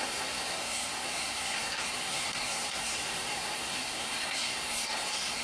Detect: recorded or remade remade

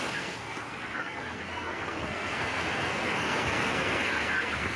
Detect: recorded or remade remade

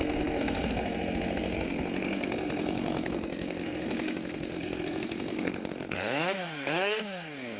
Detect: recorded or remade remade